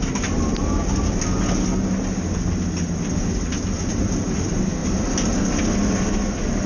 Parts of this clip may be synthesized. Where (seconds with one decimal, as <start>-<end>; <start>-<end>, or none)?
none